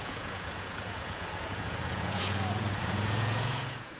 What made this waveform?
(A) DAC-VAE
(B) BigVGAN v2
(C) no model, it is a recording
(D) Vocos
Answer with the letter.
D